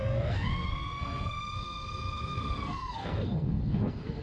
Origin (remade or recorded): remade